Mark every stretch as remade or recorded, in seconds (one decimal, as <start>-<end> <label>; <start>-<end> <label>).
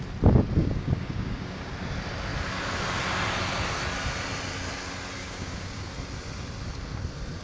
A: 0.0-0.6 recorded; 0.6-1.7 remade; 1.7-5.2 recorded; 5.2-5.9 remade; 5.9-7.4 recorded